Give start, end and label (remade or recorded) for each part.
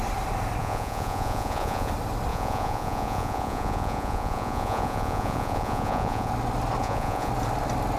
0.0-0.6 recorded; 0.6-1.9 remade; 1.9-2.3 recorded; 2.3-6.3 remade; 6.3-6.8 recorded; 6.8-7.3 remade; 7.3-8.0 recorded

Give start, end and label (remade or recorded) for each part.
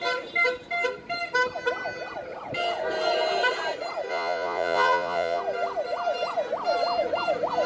0.0-4.1 recorded; 4.1-5.4 remade; 5.4-7.7 recorded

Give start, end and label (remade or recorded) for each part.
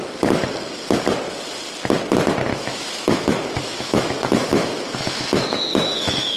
0.0-2.5 recorded; 2.5-6.4 remade